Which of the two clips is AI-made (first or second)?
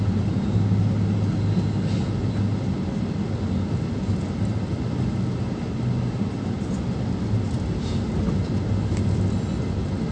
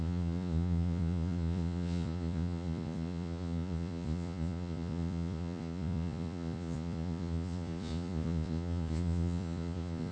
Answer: second